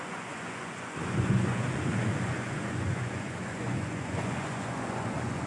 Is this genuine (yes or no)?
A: no